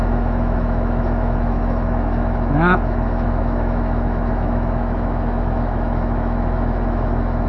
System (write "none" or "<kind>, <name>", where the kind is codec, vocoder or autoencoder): autoencoder, DAC-VAE